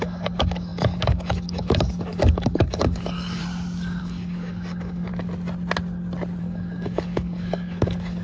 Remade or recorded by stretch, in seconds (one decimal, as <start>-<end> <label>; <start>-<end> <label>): 0.0-3.4 remade; 3.4-4.0 recorded; 4.0-5.1 remade; 5.1-6.4 recorded; 6.4-8.2 remade